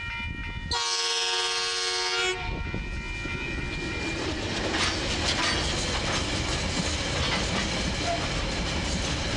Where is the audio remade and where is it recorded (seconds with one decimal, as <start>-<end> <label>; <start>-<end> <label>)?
0.0-9.4 recorded